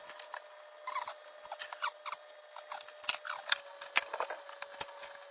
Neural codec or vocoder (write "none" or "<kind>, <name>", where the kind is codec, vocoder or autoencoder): none